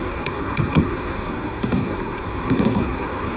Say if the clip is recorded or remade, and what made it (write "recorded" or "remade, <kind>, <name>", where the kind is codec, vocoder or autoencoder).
remade, codec, SNAC